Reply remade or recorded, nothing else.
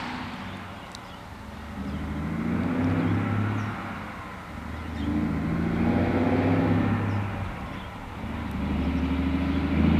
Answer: recorded